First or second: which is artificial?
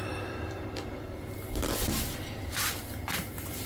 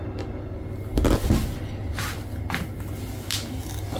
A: first